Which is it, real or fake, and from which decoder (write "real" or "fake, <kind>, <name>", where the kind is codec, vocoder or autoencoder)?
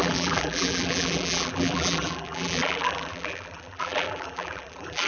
fake, vocoder, BigVGAN v2